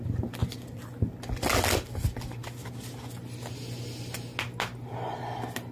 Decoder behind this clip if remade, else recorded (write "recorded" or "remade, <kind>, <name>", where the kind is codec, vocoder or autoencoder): recorded